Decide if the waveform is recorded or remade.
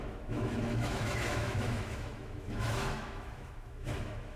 remade